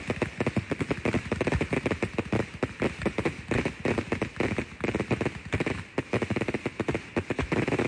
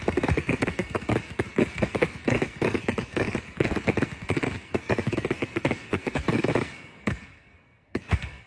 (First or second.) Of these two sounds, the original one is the first